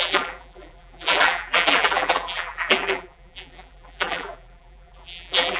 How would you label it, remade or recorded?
remade